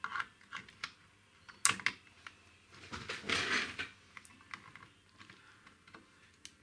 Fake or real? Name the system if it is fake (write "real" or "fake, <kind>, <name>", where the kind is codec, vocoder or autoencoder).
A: real